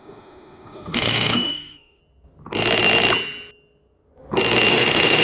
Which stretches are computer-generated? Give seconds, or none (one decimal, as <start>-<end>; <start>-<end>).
0.0-2.0; 4.7-5.2